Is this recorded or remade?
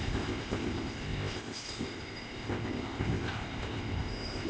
remade